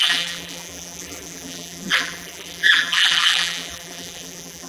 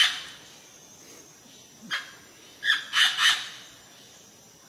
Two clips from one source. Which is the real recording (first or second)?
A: second